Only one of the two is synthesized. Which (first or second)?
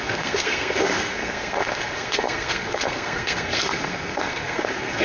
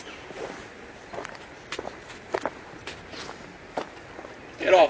first